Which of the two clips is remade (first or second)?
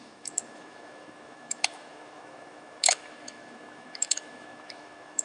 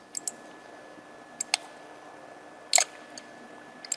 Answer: first